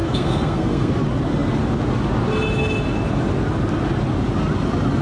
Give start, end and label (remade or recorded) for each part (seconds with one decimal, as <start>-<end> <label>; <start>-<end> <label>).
0.0-0.9 remade; 0.9-5.0 recorded